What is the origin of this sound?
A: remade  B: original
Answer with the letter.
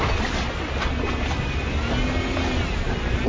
B